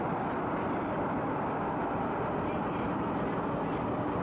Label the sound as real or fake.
real